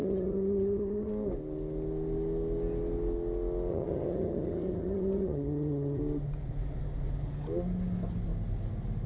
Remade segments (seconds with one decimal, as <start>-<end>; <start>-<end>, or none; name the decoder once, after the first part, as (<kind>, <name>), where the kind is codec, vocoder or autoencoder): 0.0-1.1 (vocoder, HiFi-GAN); 3.7-6.0